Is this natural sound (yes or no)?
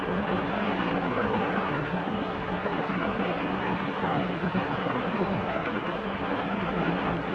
no